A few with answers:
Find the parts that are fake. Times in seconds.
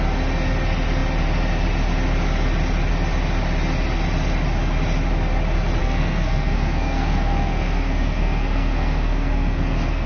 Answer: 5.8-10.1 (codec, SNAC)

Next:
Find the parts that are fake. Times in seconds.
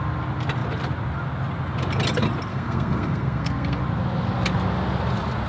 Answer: 2.5-3.8 (codec, SNAC)